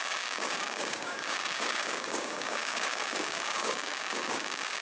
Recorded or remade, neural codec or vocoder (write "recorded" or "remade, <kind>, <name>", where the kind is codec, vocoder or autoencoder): remade, codec, DAC